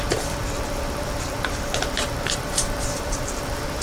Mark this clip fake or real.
fake